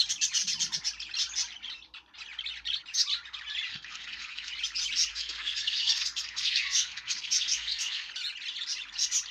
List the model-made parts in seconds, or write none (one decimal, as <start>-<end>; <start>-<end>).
3.7-4.5; 5.1-8.1